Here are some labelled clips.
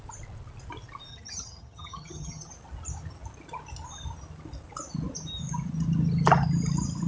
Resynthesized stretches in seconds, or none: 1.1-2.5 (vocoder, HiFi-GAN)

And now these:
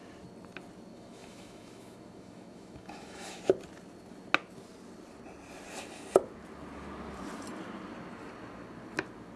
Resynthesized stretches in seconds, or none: 0.9-3.4 (autoencoder, DAC-VAE)

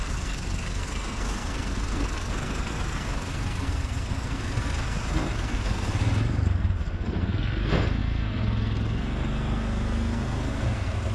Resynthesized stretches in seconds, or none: 0.0-11.1 (codec, SNAC)

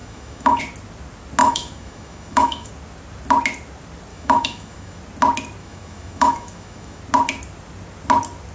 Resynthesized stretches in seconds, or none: 0.0-0.6 (autoencoder, DAC-VAE); 1.4-2.7; 4.1-5.0; 5.6-7.0

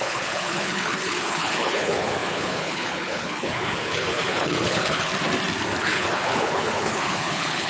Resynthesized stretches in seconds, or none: 0.0-5.1 (codec, HILCodec); 5.8-7.7

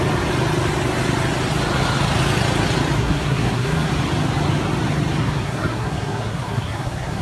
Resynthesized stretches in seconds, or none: 3.0-3.9 (codec, SNAC); 5.2-7.2

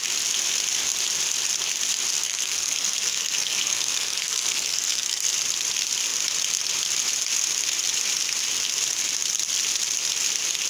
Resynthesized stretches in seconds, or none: 2.2-5.3 (codec, SNAC)